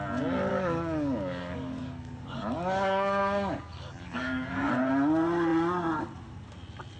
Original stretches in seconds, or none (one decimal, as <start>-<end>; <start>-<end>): 0.0-0.5; 4.7-7.0